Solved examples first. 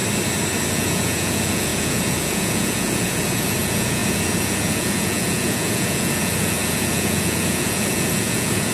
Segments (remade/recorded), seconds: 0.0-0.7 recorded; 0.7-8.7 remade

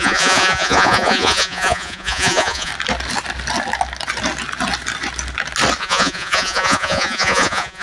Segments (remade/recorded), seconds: 0.0-2.7 remade; 2.7-5.8 recorded; 5.8-7.8 remade

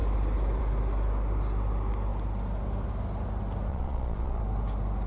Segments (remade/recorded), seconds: 0.0-3.7 recorded; 3.7-4.4 remade; 4.4-5.1 recorded